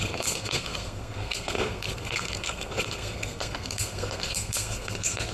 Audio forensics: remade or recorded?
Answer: remade